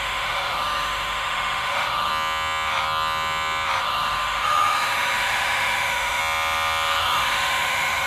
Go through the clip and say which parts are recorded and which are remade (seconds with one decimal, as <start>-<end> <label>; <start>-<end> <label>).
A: 0.0-2.1 remade; 2.1-3.8 recorded; 3.8-6.2 remade; 6.2-7.0 recorded; 7.0-8.1 remade